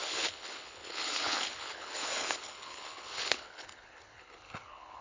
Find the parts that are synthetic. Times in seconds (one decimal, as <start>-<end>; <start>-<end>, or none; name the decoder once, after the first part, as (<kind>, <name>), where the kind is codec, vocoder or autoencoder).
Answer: 0.0-5.0 (codec, HILCodec)